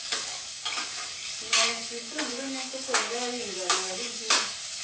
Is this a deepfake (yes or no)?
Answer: yes